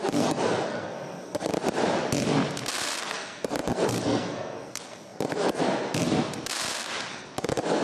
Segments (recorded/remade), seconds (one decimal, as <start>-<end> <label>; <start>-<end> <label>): 0.0-1.5 remade; 1.5-3.0 recorded; 3.0-6.0 remade; 6.0-7.1 recorded; 7.1-7.8 remade